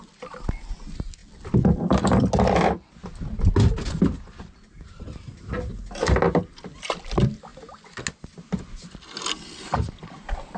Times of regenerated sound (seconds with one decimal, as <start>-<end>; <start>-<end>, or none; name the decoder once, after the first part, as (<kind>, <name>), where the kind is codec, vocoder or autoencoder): none